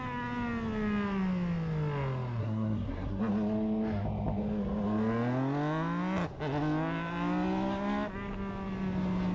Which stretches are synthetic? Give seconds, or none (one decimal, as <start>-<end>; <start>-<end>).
2.4-3.2